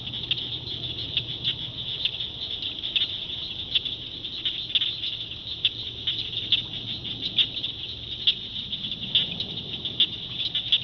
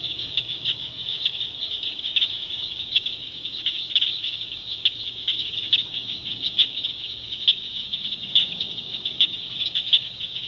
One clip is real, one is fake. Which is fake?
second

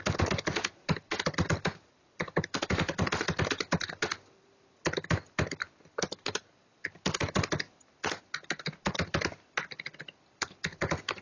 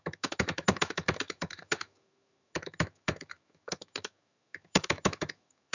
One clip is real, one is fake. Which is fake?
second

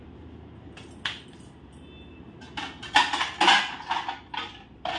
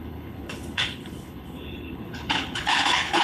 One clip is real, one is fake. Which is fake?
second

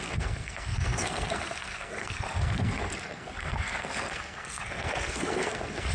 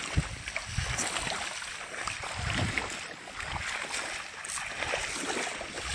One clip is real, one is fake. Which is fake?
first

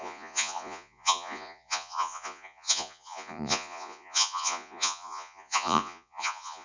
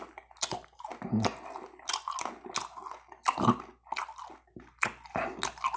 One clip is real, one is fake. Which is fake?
first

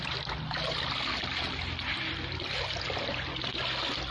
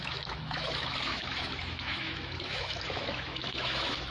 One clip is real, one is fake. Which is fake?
second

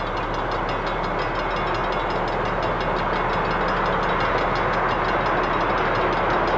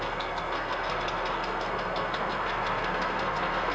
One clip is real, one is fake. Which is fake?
second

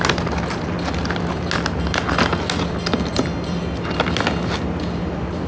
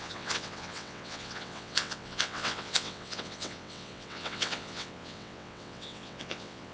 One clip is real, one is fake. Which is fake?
second